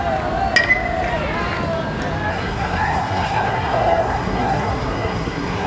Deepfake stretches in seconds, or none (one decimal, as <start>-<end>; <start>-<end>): 2.3-5.7